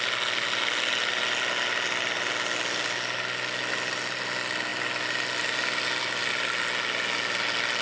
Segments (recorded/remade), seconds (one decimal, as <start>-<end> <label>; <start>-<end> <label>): 0.0-7.8 recorded